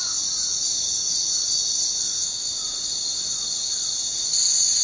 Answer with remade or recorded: recorded